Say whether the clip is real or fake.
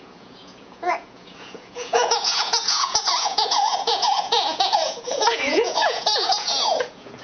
fake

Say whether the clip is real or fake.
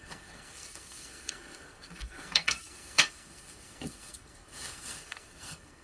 fake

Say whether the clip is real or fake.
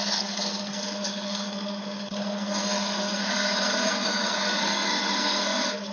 fake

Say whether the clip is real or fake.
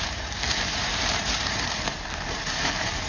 fake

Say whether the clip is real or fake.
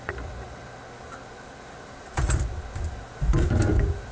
real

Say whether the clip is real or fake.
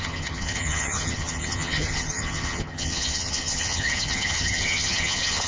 fake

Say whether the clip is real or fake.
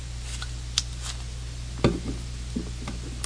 real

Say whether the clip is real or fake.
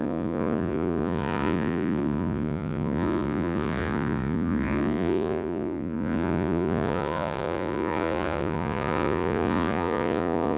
fake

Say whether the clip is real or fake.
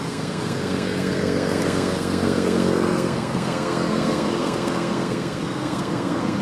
fake